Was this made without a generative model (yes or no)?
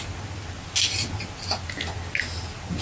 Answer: yes